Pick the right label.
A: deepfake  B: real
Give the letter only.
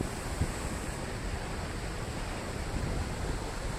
B